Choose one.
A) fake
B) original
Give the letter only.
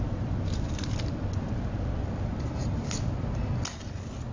B